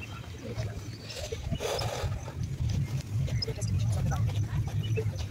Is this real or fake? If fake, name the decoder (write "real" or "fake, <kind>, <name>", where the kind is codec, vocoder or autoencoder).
real